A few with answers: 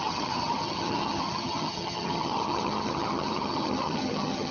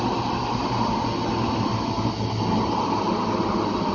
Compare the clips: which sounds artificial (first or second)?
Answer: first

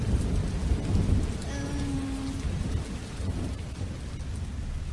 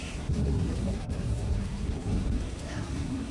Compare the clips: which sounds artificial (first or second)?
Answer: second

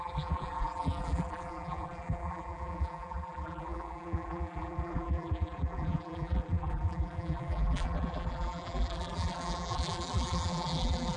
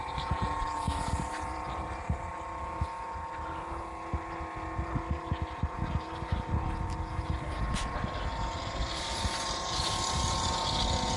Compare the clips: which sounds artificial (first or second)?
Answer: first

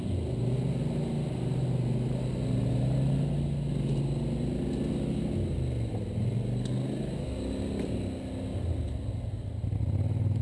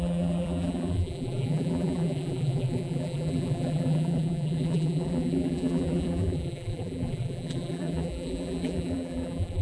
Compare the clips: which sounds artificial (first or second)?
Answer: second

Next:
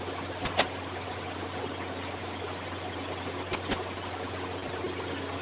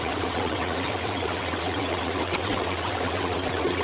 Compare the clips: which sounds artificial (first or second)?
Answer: second